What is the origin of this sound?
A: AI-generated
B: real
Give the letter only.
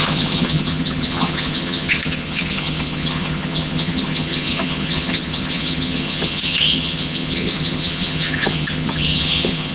A